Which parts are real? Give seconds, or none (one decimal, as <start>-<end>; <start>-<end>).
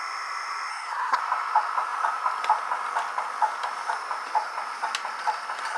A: 0.0-0.7; 1.2-5.8